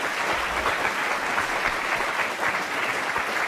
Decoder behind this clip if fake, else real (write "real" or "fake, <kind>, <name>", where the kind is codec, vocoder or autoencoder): real